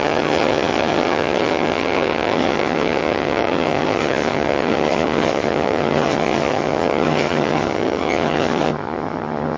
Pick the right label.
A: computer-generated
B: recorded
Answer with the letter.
A